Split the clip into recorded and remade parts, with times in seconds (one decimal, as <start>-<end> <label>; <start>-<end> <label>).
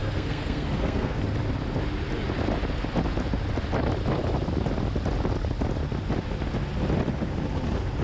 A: 0.0-1.2 remade; 1.2-8.0 recorded